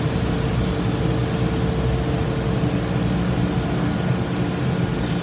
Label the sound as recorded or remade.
recorded